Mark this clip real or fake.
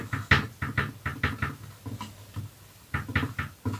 real